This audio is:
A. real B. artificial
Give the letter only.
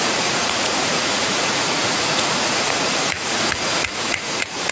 B